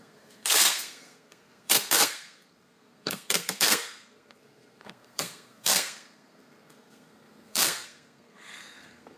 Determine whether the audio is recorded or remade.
remade